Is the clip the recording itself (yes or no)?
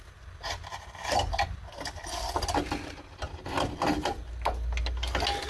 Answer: yes